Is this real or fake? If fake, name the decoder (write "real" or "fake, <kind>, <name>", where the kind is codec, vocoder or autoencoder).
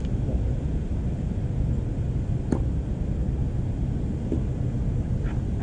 real